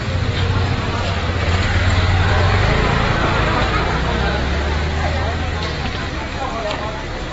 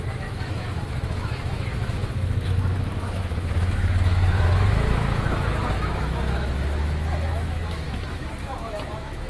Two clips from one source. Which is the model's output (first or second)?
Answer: second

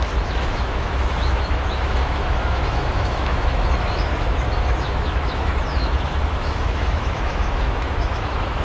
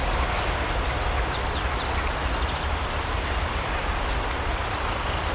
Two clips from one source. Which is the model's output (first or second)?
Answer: first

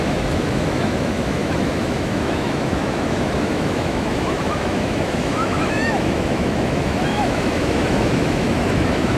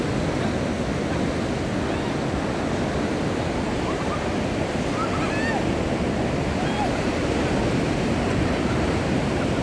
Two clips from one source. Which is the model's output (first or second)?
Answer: first